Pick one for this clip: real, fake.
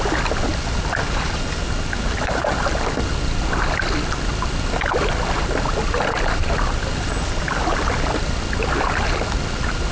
real